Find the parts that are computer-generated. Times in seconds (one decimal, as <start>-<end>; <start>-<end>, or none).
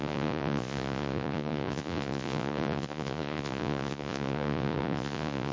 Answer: 0.0-5.5